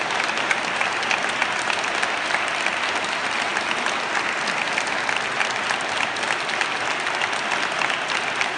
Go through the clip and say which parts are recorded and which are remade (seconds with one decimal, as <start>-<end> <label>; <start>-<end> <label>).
0.0-8.6 recorded